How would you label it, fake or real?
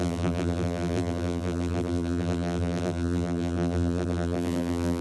fake